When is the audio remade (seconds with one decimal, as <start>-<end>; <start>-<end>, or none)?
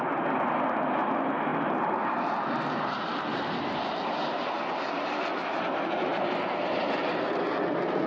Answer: none